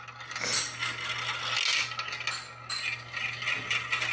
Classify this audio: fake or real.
real